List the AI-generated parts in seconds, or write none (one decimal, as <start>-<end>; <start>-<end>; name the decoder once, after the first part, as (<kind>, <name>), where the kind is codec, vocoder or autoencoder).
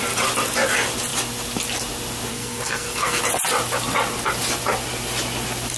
2.3-3.2 (codec, SNAC)